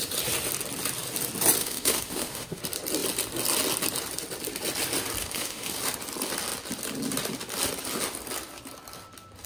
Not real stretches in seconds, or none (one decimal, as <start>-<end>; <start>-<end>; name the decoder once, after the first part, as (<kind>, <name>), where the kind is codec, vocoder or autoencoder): 1.6-2.6 (autoencoder, DAC-VAE); 5.2-5.7

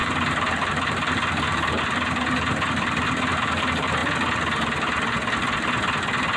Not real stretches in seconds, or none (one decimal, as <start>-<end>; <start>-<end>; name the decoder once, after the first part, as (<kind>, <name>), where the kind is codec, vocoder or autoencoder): 0.0-4.0 (vocoder, BigVGAN v2)

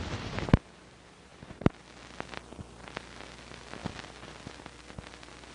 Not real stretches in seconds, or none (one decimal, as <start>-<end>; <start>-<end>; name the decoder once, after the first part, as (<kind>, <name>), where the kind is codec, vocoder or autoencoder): none

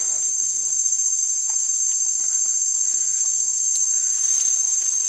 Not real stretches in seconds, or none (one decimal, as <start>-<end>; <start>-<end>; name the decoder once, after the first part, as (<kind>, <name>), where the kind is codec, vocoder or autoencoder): none